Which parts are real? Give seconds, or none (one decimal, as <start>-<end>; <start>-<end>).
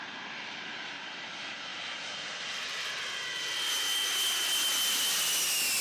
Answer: 0.0-1.7; 2.4-5.8